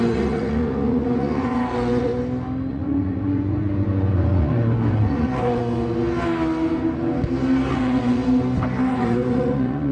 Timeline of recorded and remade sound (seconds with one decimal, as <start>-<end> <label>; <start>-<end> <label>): 0.0-2.1 remade; 2.1-2.7 recorded; 2.7-5.6 remade; 5.6-7.7 recorded; 7.7-8.2 remade; 8.2-8.9 recorded; 8.9-9.9 remade